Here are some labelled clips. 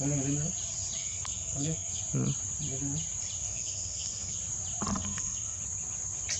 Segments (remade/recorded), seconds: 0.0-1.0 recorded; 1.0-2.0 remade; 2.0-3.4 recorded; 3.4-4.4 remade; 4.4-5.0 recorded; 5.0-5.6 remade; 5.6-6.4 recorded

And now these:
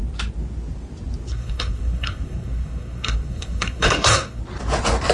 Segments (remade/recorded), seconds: 0.0-1.3 recorded; 1.3-4.4 remade; 4.4-5.1 recorded

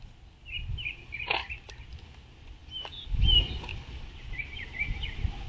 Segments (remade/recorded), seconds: 0.0-5.5 recorded